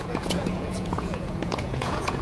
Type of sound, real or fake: fake